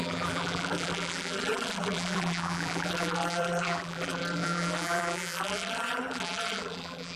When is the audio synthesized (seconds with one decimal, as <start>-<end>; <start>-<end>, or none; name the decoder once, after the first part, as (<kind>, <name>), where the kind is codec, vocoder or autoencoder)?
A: 0.0-7.2 (vocoder, BigVGAN v2)